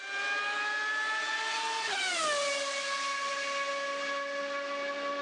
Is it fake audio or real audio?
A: real